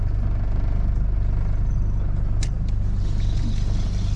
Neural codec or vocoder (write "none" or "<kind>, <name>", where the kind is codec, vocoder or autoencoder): none